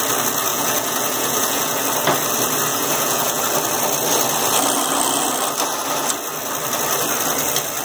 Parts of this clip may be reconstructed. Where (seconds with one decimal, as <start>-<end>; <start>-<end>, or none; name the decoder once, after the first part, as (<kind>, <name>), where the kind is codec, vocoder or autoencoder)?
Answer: 0.5-1.8 (vocoder, Vocos); 2.7-3.4